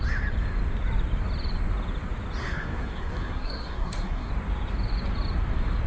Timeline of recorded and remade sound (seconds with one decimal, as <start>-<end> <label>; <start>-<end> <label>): 0.0-2.4 recorded; 2.4-4.3 remade; 4.3-5.9 recorded